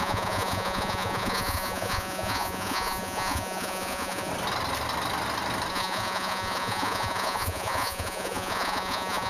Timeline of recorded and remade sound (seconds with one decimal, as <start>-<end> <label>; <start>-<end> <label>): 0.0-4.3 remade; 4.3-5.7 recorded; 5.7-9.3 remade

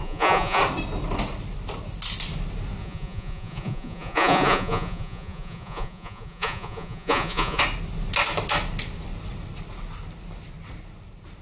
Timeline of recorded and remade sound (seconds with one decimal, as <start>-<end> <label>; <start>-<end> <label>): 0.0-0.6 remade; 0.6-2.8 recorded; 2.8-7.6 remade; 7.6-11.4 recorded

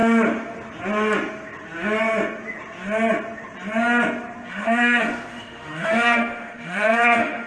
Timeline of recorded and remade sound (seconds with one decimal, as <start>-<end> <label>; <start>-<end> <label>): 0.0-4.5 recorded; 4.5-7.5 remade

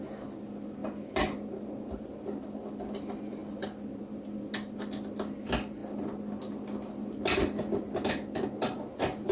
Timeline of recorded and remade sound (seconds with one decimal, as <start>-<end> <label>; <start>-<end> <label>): 0.0-9.3 recorded